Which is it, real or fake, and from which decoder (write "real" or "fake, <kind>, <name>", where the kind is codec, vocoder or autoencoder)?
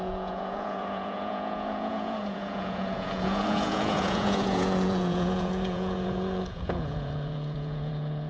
fake, vocoder, Vocos